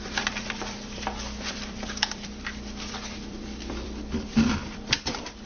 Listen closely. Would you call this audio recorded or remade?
remade